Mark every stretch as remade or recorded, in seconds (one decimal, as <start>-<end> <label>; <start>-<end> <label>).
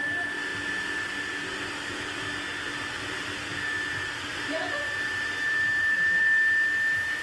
0.0-0.5 recorded; 0.5-1.5 remade; 1.5-3.5 recorded; 3.5-6.2 remade; 6.2-7.2 recorded